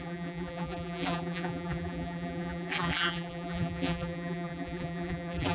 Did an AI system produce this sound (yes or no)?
yes